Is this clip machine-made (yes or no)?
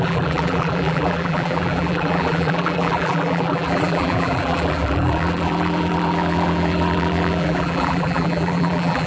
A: yes